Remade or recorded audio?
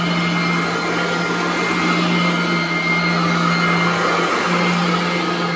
recorded